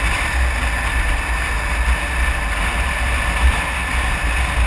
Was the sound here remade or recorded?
recorded